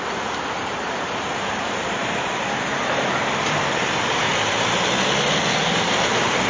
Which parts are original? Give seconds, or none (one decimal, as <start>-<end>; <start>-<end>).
4.3-5.7